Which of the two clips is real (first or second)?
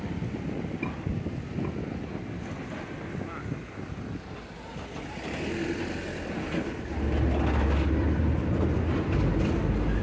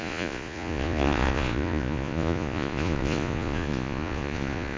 first